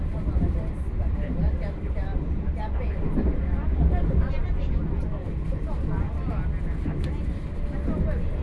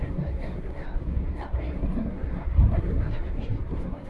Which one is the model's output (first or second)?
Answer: second